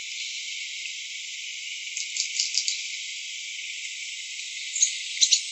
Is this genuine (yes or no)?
yes